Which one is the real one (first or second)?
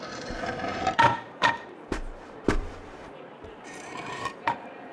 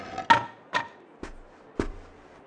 second